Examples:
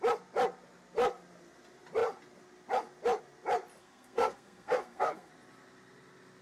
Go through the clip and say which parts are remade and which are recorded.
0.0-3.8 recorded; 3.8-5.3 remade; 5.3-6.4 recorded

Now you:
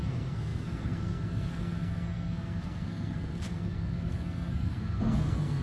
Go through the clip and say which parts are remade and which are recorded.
0.0-5.6 remade